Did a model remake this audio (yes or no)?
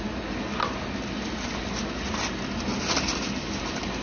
no